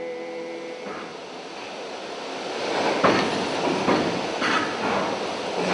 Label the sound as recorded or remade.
recorded